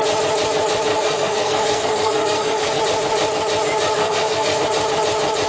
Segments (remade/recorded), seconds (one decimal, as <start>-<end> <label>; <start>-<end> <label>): 0.0-0.9 recorded; 0.9-2.8 remade; 2.8-4.0 recorded; 4.0-4.6 remade; 4.6-5.5 recorded